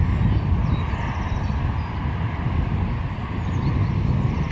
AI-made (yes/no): no